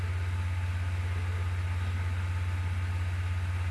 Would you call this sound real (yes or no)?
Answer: yes